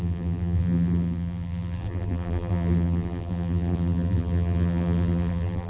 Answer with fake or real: fake